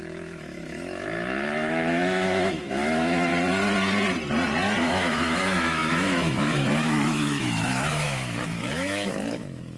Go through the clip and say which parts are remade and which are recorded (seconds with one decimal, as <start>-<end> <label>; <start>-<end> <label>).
0.0-3.3 remade; 3.3-4.8 recorded; 4.8-9.8 remade